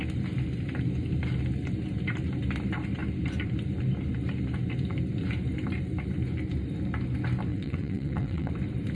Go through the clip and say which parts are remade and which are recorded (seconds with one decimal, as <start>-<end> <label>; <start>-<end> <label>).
0.0-7.5 recorded; 7.5-8.5 remade; 8.5-8.9 recorded